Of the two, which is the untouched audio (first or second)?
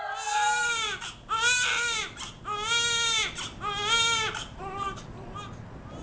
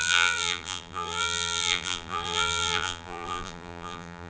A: first